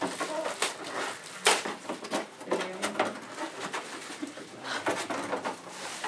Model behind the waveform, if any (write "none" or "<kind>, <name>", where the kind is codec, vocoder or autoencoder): none